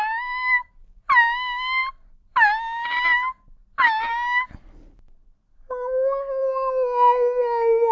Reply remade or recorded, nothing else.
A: recorded